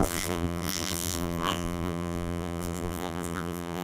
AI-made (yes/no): yes